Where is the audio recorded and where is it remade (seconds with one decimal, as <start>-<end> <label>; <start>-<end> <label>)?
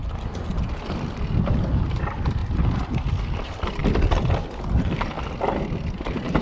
0.0-6.4 recorded